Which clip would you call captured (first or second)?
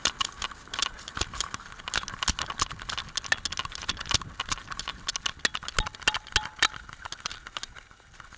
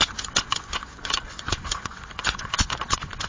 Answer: first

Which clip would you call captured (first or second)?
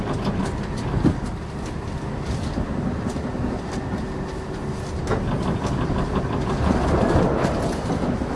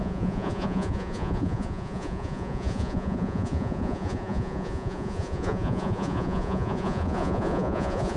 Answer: first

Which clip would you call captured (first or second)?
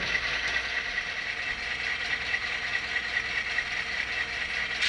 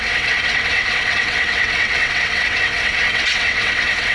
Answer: first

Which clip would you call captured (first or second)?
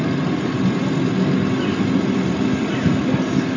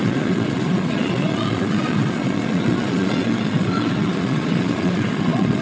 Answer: first